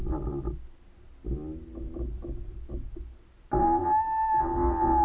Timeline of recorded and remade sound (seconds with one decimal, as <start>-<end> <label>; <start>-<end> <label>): 0.0-5.0 recorded